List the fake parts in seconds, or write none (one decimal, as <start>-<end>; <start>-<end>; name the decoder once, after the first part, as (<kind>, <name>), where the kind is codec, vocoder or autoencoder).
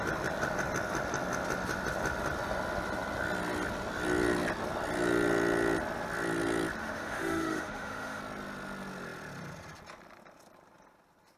6.8-8.2 (autoencoder, DAC-VAE)